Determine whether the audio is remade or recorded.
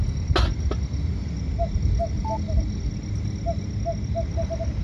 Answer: recorded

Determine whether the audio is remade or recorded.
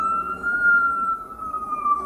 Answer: recorded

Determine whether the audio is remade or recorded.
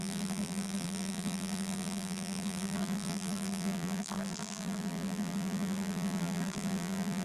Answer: remade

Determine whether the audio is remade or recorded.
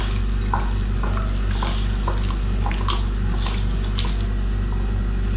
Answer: recorded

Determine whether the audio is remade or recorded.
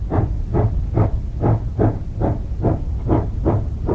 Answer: recorded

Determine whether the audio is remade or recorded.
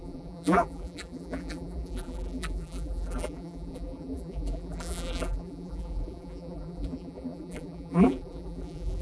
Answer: remade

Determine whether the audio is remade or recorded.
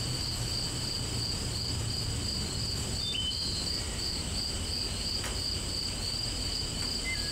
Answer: recorded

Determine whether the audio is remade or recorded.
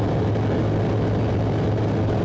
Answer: recorded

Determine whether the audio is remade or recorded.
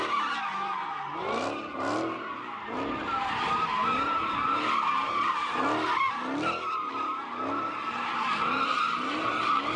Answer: recorded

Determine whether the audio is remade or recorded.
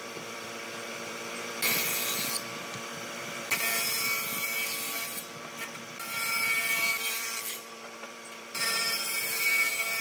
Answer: remade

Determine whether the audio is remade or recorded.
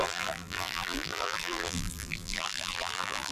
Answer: remade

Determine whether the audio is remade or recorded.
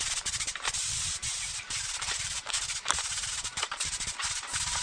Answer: remade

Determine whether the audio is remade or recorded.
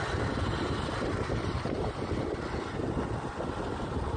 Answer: recorded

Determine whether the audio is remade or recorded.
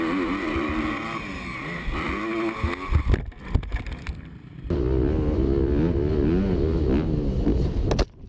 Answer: recorded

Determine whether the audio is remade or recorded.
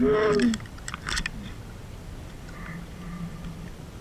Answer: recorded